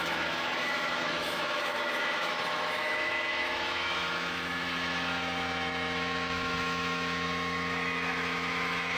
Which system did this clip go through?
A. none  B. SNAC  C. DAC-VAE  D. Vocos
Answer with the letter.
C